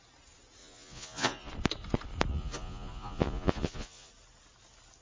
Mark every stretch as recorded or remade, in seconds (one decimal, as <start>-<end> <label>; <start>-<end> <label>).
0.0-0.6 recorded; 0.6-1.5 remade; 1.5-2.3 recorded; 2.3-4.1 remade; 4.1-5.0 recorded